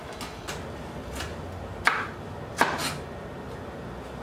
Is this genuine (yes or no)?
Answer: yes